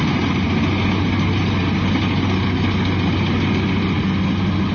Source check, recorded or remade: recorded